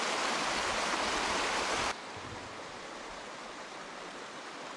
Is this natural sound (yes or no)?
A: yes